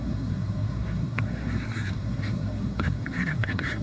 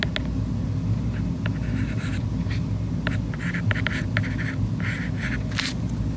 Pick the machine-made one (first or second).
first